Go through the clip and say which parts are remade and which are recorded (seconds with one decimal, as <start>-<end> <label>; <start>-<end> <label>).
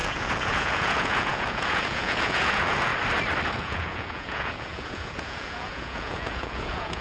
0.0-2.9 remade; 2.9-3.6 recorded; 3.6-7.0 remade